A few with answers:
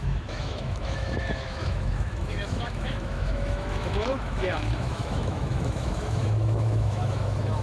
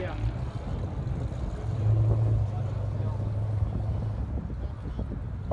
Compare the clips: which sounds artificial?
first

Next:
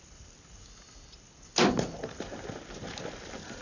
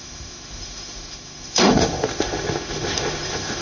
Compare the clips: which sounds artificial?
second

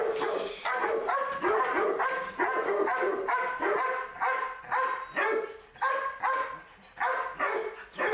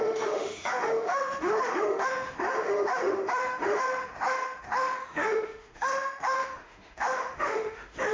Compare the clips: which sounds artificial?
second